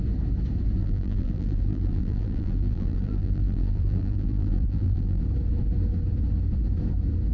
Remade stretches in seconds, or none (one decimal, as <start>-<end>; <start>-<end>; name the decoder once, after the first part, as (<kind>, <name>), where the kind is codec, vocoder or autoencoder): 0.8-5.2 (vocoder, BigVGAN v2)